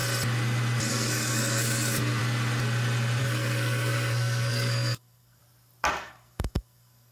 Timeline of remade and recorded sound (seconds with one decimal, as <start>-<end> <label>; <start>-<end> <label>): 0.0-0.9 recorded; 0.9-2.2 remade; 2.2-3.2 recorded; 3.2-5.4 remade; 5.4-5.9 recorded; 5.9-7.1 remade